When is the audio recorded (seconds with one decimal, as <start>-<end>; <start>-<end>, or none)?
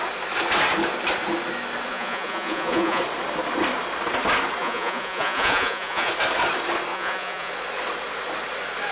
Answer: 0.0-1.9; 3.0-4.6; 6.1-6.9; 7.5-8.9